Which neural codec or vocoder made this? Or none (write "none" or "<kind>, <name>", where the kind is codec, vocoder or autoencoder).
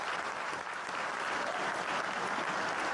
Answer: none